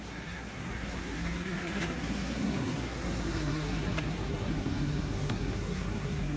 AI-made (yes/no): yes